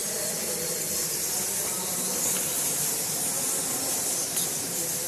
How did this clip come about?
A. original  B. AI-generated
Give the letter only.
B